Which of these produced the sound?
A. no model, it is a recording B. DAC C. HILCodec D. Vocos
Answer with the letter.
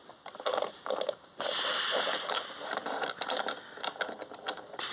A